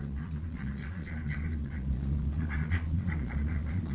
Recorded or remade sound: remade